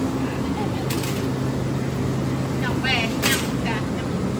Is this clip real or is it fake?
real